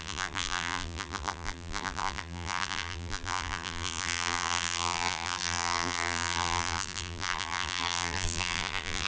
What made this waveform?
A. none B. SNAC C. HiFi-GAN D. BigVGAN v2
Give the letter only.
D